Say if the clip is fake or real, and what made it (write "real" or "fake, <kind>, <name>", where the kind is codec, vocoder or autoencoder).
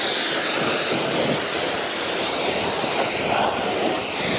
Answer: real